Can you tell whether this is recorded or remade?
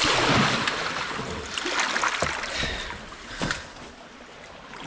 recorded